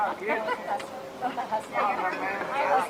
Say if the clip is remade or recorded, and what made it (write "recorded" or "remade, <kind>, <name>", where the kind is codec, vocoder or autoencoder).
recorded